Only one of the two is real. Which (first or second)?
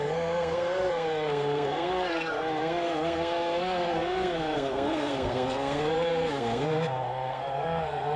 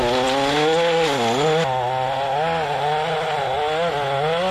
second